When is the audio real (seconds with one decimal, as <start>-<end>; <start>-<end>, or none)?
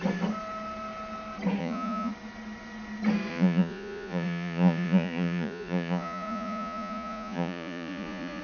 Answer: 0.0-1.6; 2.1-3.3